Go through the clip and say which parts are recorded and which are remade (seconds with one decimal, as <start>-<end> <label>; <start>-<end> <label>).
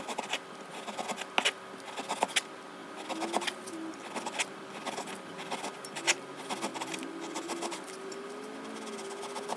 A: 0.0-9.6 recorded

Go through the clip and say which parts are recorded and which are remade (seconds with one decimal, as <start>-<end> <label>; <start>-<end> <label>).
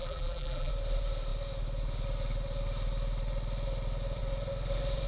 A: 0.0-0.7 remade; 0.7-5.1 recorded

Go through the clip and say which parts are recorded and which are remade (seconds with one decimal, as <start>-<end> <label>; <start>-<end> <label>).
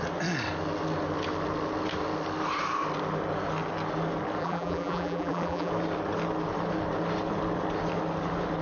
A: 0.0-4.4 recorded; 4.4-5.7 remade; 5.7-8.6 recorded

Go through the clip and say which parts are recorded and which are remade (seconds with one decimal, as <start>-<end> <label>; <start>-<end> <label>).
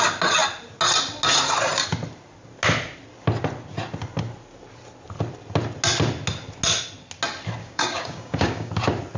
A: 0.0-7.6 recorded; 7.6-8.7 remade; 8.7-9.2 recorded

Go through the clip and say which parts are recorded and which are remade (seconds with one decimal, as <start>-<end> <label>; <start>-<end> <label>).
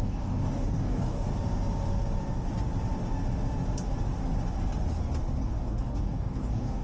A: 0.0-1.3 remade; 1.3-5.4 recorded; 5.4-6.8 remade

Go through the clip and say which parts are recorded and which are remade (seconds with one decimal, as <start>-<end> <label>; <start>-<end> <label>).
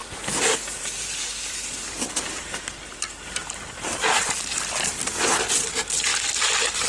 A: 0.0-2.9 recorded; 2.9-5.2 remade; 5.2-6.1 recorded; 6.1-6.9 remade